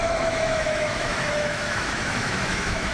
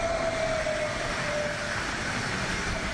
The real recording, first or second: second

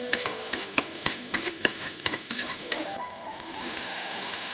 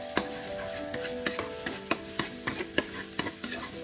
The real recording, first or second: second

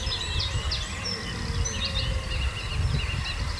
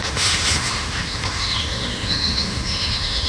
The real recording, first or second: first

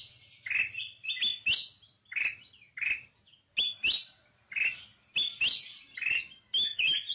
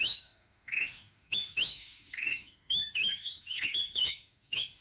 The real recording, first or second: first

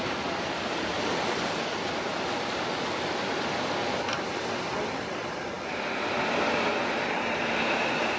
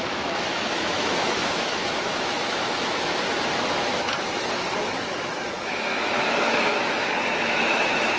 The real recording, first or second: first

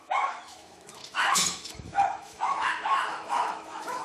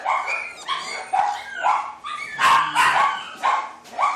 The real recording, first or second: second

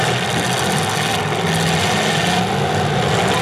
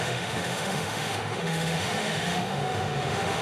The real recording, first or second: first